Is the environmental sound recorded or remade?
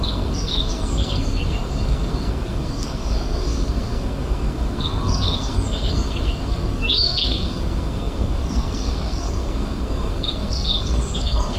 remade